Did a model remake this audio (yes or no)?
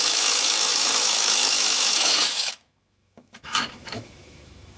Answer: yes